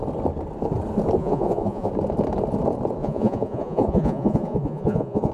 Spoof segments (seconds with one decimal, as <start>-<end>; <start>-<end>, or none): 1.2-1.9; 3.0-5.3